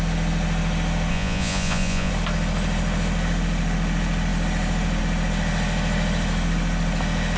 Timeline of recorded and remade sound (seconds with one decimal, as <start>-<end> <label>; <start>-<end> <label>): 0.0-1.1 recorded; 1.1-2.1 remade; 2.1-7.4 recorded